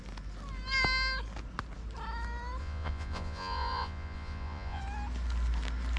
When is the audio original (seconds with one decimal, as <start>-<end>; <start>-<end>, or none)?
0.0-2.6; 4.8-6.0